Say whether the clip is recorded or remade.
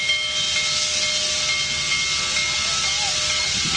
recorded